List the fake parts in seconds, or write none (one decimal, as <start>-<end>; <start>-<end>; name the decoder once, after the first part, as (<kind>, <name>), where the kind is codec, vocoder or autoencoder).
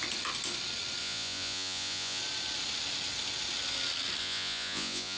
1.0-2.2 (vocoder, Vocos); 4.2-5.2